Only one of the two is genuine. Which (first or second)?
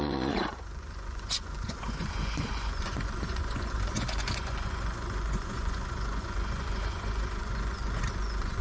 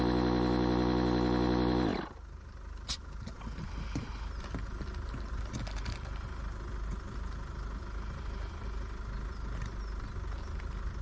second